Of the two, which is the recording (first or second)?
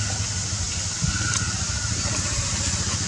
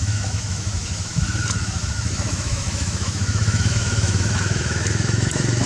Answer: first